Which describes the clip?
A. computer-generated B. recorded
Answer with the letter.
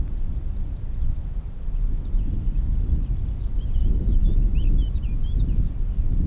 A